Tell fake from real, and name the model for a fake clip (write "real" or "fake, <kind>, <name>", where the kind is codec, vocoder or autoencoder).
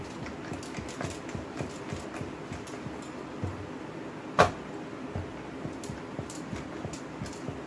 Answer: real